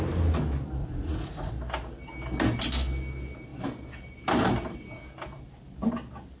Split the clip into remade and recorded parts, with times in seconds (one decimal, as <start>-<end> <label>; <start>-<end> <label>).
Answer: 0.0-0.8 recorded; 0.8-1.5 remade; 1.5-6.4 recorded